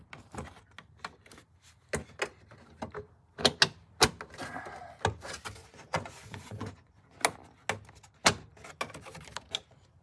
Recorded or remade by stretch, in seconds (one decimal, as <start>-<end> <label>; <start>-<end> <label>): 0.0-5.6 recorded; 5.6-7.2 remade; 7.2-10.0 recorded

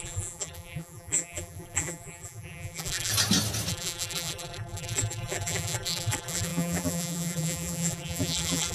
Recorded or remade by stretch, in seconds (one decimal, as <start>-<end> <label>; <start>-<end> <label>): 0.0-3.1 remade; 3.1-3.7 recorded; 3.7-8.7 remade

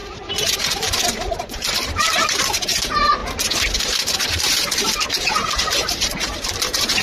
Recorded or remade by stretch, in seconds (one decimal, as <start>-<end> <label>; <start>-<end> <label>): 0.0-3.2 remade; 3.2-3.8 recorded; 3.8-7.0 remade

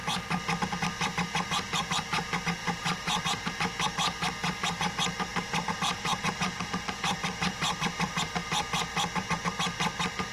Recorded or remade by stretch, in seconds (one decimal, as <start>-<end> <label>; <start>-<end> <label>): 0.0-2.6 recorded; 2.6-3.2 remade; 3.2-5.3 recorded; 5.3-8.3 remade; 8.3-10.3 recorded

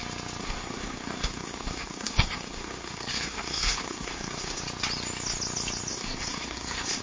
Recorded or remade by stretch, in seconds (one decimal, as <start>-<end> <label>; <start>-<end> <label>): 0.0-0.4 recorded; 0.4-4.6 remade; 4.6-5.9 recorded; 5.9-7.0 remade

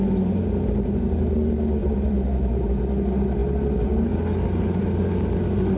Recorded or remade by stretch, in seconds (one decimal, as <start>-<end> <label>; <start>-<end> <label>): 0.0-1.8 recorded; 1.8-2.5 remade; 2.5-5.8 recorded